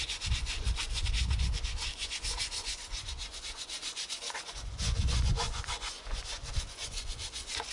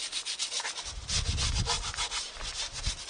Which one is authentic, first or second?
second